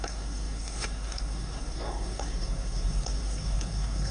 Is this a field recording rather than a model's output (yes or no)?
no